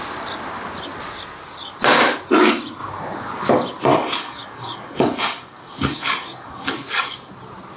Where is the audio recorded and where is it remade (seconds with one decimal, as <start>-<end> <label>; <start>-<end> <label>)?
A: 0.0-3.9 recorded; 3.9-7.3 remade; 7.3-7.8 recorded